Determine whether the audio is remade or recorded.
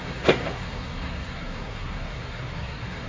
remade